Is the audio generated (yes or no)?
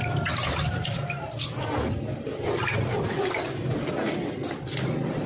no